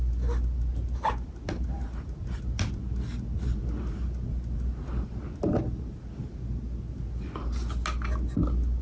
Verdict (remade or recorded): recorded